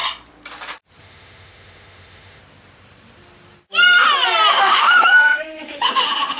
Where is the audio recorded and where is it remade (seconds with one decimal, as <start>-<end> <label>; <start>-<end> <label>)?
0.0-1.0 recorded; 1.0-2.4 remade; 2.4-4.5 recorded; 4.5-6.4 remade